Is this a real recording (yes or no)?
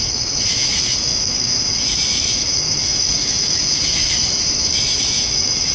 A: no